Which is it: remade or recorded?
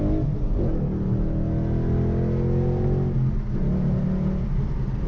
recorded